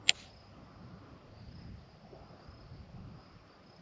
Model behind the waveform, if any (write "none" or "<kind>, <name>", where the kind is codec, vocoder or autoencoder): none